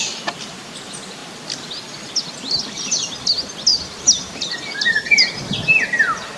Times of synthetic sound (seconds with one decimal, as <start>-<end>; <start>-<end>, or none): 3.7-5.3